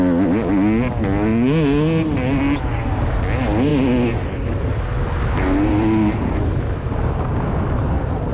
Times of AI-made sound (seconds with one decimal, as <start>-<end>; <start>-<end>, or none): none